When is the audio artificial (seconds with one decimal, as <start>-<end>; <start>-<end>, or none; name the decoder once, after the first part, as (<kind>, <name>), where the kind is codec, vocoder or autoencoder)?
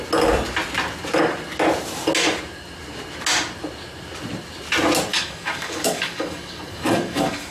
5.1-7.5 (codec, DAC)